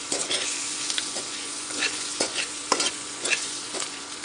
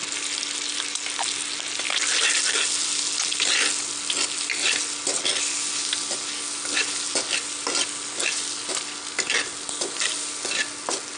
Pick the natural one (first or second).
second